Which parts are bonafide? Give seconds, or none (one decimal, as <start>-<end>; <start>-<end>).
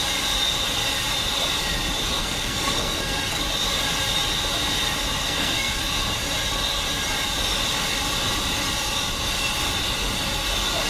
0.0-2.2; 3.4-5.2; 5.8-10.9